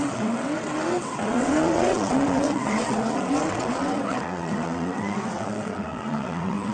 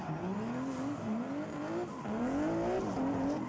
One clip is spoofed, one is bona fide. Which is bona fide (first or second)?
second